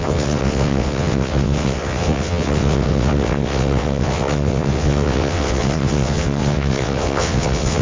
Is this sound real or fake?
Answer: fake